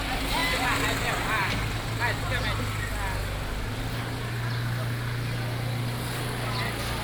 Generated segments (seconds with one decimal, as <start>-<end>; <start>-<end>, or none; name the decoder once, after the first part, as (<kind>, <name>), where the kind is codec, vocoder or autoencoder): none

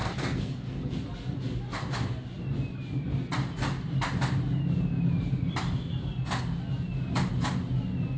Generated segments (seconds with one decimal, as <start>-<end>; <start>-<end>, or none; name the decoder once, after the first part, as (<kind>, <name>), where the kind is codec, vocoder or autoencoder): 0.0-1.0 (codec, SNAC)

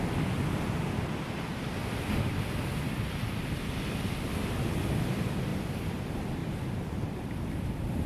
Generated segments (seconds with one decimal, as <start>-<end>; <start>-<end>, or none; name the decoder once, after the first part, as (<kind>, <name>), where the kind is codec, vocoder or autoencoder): 1.8-4.0 (vocoder, BigVGAN v2); 6.4-7.5

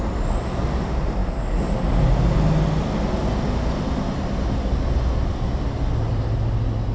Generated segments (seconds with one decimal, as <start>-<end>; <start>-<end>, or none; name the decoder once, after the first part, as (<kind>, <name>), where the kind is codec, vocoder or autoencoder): none

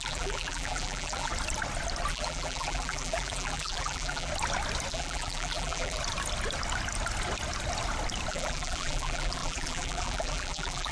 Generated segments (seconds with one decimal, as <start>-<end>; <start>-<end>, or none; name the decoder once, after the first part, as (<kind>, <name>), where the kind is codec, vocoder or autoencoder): 0.0-1.3 (vocoder, BigVGAN v2); 2.1-4.3; 4.9-6.0; 8.3-10.9

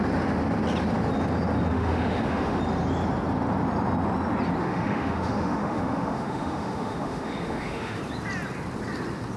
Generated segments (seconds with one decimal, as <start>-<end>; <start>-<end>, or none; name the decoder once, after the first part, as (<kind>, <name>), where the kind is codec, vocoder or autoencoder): 1.7-2.6 (autoencoder, DAC-VAE); 4.6-8.0

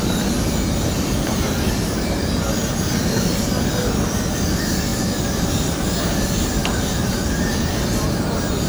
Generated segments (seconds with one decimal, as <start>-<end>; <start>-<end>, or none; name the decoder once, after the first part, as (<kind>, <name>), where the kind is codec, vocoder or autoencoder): 6.6-7.6 (vocoder, BigVGAN v2)

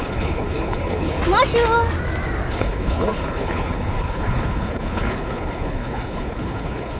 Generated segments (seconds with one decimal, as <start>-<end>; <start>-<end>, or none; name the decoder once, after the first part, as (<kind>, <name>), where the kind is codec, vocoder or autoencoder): 0.0-1.2 (codec, HILCodec); 2.5-7.0